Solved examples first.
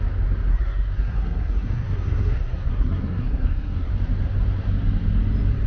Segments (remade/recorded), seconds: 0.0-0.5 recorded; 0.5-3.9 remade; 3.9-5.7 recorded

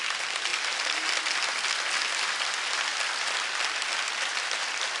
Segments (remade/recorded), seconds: 0.0-5.0 recorded

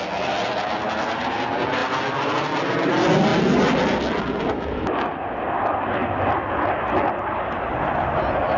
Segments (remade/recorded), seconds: 0.0-8.6 recorded